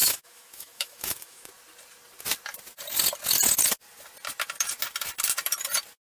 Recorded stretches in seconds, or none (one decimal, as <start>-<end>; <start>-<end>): 1.5-6.1